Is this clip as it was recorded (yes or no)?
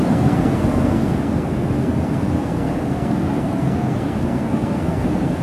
no